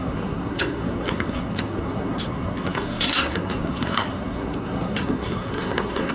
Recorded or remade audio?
remade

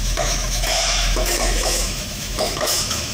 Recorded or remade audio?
remade